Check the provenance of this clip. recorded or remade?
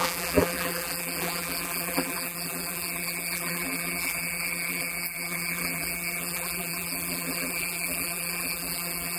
remade